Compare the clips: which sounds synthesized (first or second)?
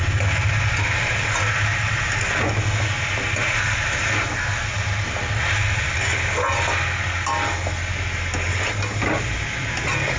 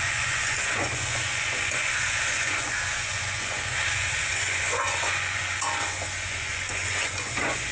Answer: second